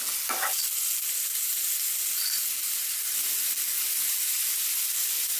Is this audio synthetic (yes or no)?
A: no